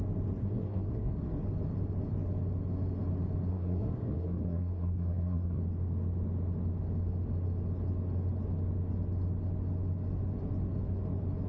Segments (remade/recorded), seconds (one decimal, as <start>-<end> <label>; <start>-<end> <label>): 0.0-0.4 recorded; 0.4-1.1 remade; 1.1-3.5 recorded; 3.5-5.6 remade; 5.6-11.5 recorded